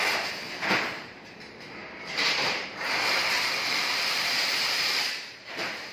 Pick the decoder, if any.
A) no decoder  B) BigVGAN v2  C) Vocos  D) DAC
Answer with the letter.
B